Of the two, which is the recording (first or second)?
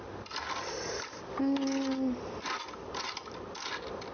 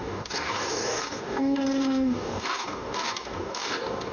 first